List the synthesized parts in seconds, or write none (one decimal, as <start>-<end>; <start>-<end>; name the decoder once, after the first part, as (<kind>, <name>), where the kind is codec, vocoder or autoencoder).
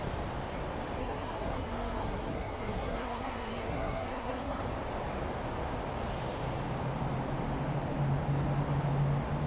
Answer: 1.0-4.6 (codec, SNAC)